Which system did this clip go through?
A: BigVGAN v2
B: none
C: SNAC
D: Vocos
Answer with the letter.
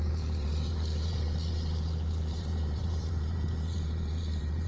A